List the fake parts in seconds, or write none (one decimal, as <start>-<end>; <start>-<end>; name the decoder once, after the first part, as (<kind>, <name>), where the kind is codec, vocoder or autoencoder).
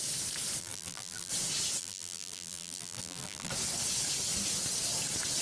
0.6-1.3 (vocoder, BigVGAN v2); 1.8-3.5